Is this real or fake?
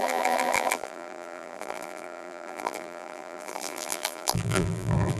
fake